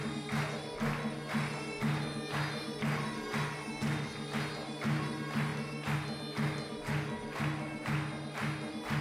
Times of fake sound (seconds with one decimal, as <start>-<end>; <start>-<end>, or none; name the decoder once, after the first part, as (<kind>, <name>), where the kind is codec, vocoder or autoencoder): none